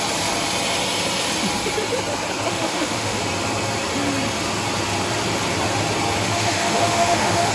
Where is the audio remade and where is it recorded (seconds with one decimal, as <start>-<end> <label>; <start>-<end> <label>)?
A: 0.0-2.5 recorded; 2.5-3.2 remade; 3.2-6.2 recorded; 6.2-7.5 remade